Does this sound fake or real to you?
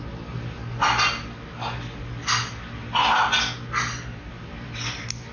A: real